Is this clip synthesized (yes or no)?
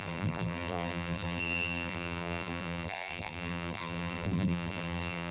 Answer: yes